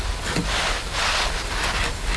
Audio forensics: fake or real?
real